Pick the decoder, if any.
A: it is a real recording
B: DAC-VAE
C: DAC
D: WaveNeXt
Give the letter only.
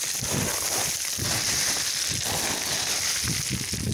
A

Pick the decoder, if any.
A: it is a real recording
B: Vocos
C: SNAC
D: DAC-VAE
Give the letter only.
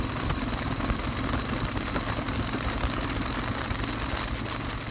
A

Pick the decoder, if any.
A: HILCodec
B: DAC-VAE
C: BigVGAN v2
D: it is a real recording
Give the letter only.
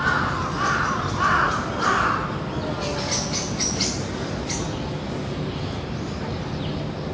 D